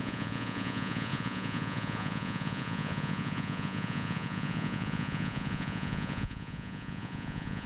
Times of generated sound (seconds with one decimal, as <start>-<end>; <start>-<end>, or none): 0.0-7.7